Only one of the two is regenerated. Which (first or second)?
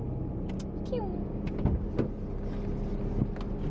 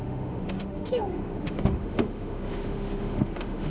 second